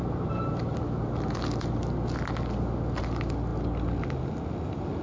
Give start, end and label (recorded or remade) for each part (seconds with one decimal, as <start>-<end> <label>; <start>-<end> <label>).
0.0-5.0 recorded